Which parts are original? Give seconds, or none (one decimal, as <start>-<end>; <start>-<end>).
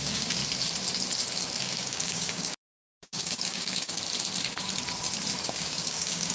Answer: 0.4-1.6; 4.0-5.4